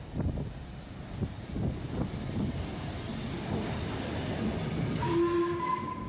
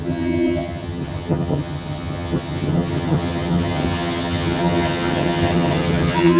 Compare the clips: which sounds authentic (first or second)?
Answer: first